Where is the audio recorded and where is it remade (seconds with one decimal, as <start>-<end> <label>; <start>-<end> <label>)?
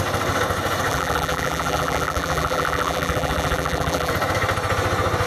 0.0-0.9 recorded; 0.9-4.1 remade; 4.1-5.3 recorded